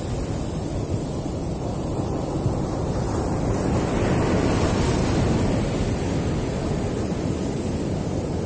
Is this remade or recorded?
recorded